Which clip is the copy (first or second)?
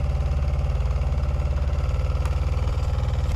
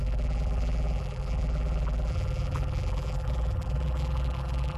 second